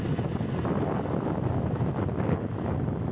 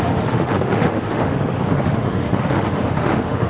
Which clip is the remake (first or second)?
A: second